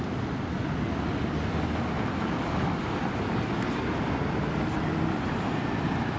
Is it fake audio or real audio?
real